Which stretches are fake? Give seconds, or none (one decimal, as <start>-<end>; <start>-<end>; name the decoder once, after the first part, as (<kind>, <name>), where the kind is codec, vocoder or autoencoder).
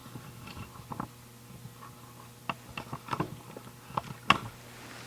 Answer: 0.0-0.5 (vocoder, BigVGAN v2)